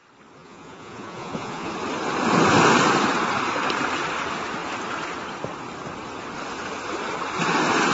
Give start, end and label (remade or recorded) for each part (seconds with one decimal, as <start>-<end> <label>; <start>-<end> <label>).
0.0-0.4 recorded; 0.4-1.7 remade; 1.7-7.9 recorded